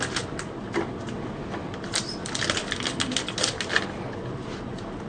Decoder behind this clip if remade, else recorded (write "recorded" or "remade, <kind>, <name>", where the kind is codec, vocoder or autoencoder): recorded